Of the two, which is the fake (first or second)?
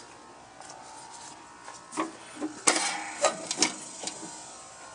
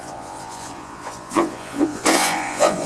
second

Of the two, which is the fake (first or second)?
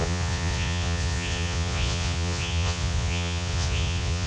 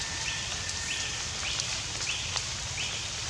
first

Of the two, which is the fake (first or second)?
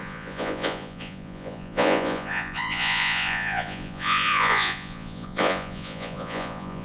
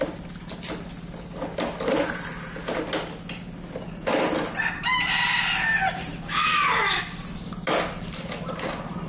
first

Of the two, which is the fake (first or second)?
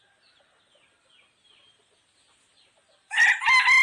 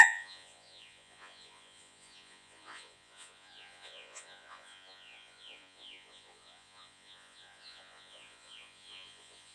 second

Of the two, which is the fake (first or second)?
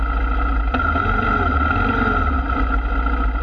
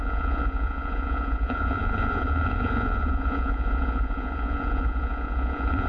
second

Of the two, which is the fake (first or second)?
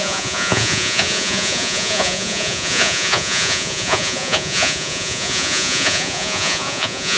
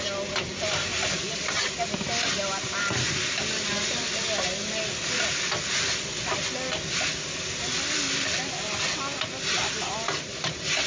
first